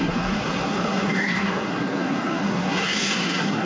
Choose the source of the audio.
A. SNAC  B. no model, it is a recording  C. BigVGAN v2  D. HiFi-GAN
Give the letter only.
A